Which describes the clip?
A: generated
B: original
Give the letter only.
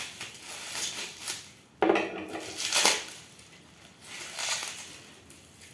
B